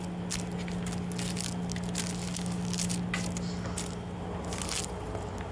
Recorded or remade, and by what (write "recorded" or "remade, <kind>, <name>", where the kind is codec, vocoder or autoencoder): recorded